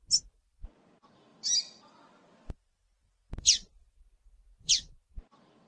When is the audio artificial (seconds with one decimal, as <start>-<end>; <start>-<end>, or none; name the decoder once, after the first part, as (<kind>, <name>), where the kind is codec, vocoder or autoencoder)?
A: none